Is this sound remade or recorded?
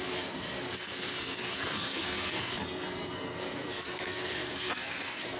remade